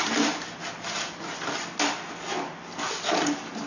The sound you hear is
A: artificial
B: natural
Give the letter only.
B